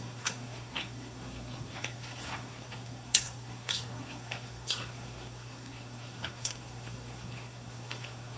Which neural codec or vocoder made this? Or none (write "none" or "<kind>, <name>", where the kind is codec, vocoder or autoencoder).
codec, SNAC